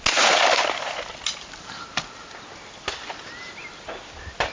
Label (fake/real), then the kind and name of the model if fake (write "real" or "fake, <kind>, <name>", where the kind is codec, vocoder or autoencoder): real